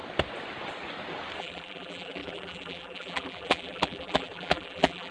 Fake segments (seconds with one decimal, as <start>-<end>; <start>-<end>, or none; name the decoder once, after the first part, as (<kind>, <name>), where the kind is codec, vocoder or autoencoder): 1.4-5.1 (vocoder, BigVGAN v2)